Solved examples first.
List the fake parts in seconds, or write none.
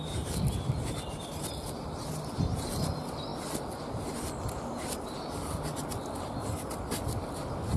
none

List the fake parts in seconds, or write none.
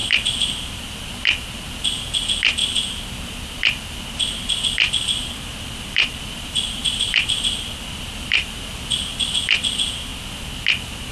0.0-1.1 (vocoder, BigVGAN v2); 5.5-9.1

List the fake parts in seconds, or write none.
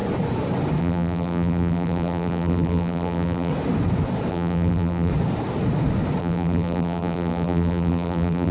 0.8-3.5 (vocoder, BigVGAN v2); 4.3-5.1; 6.2-8.5